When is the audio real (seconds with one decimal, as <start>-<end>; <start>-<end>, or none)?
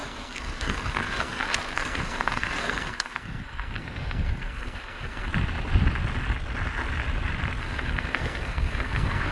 5.3-7.6